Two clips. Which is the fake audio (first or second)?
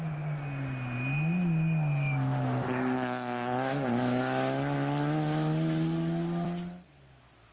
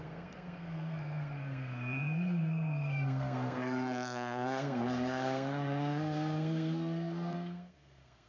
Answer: second